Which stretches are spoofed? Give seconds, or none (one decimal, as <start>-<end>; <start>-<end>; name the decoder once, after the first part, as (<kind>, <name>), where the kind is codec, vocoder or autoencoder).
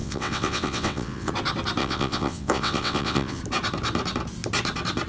0.0-1.3 (vocoder, WaveNeXt); 1.8-3.4